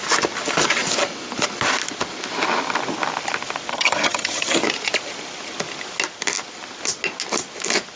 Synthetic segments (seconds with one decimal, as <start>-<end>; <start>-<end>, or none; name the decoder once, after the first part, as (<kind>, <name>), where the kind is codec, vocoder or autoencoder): 3.7-4.6 (vocoder, HiFi-GAN)